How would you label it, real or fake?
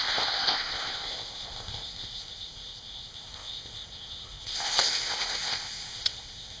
fake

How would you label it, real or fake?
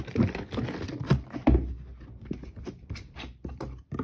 real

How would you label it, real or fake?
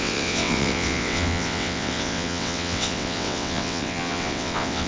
fake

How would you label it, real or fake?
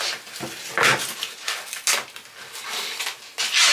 real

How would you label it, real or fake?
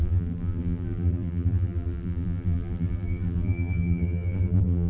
fake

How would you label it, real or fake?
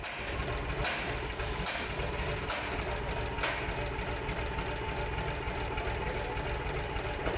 real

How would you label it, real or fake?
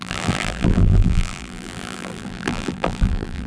fake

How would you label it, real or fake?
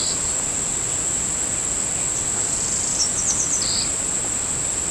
real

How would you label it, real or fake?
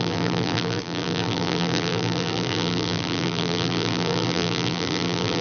fake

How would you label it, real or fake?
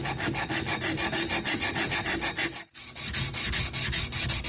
real